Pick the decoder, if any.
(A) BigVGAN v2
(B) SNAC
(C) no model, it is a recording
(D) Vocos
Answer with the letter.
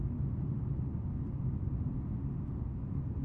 C